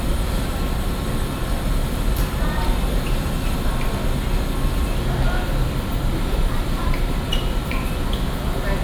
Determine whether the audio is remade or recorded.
remade